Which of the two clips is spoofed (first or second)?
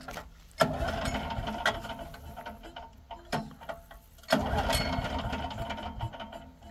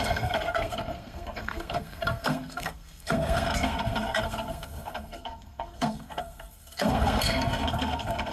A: second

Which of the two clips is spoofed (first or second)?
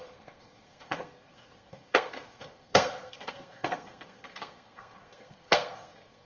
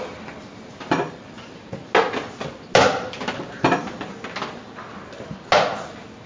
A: first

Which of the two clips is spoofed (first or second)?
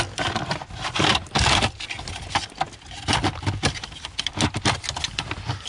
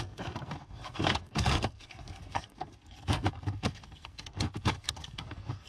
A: second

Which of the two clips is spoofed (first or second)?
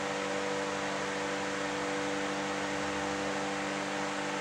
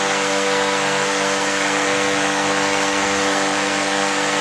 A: second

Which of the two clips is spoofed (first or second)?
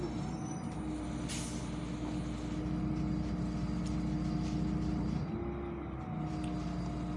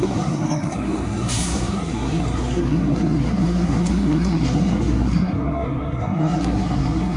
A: second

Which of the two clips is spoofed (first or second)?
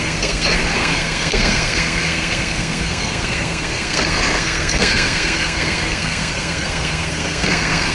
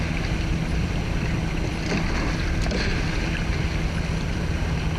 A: first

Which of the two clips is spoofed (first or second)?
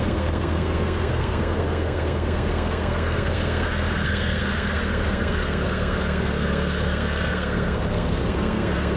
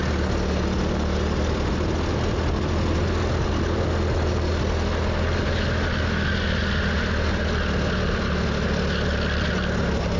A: first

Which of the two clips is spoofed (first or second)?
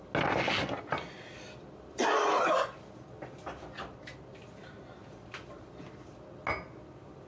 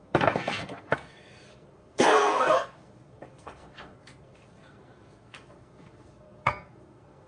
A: second